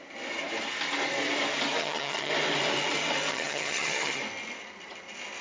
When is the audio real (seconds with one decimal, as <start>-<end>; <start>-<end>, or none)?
0.0-1.8; 2.3-3.3; 4.2-5.4